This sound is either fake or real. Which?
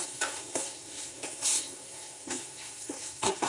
fake